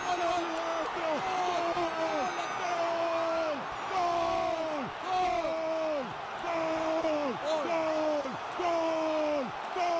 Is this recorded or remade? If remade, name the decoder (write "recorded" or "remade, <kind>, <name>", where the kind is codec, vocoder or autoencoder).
recorded